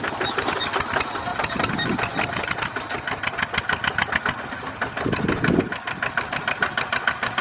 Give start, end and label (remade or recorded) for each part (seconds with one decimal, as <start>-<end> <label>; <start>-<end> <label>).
0.0-7.4 recorded